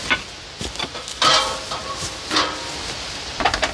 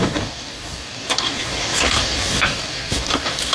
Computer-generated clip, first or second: second